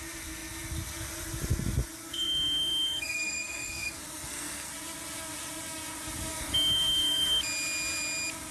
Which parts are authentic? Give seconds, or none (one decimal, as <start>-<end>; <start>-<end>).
0.0-2.0; 4.7-6.3; 7.4-8.5